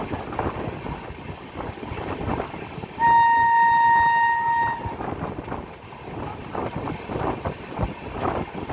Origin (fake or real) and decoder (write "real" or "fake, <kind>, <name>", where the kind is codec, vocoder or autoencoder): real